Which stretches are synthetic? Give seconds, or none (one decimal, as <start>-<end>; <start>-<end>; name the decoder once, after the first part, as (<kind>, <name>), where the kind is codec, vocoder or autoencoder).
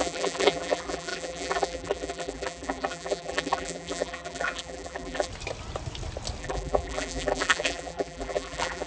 0.0-5.3 (vocoder, BigVGAN v2); 6.4-8.9